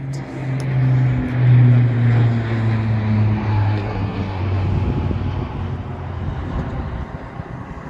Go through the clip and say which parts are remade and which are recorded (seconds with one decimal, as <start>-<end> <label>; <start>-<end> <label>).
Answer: 0.0-3.5 recorded; 3.5-4.4 remade; 4.4-7.9 recorded